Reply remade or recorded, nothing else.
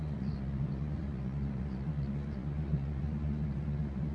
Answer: remade